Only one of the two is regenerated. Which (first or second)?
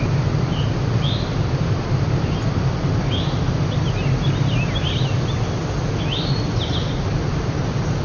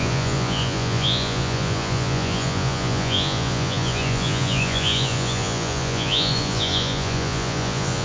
second